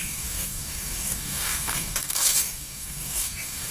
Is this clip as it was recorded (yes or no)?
no